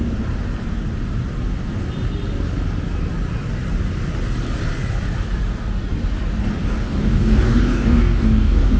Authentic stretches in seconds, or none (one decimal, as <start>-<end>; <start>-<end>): 0.0-6.6